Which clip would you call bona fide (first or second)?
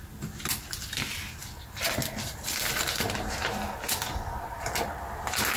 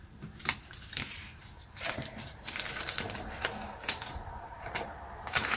first